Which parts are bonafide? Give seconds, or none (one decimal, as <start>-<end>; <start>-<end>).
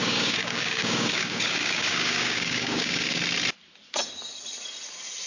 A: 3.2-5.3